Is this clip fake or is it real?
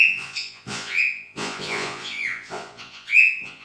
fake